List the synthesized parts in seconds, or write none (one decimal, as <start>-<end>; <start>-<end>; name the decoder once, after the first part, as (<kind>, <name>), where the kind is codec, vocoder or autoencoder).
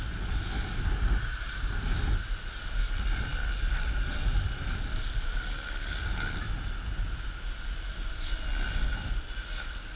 none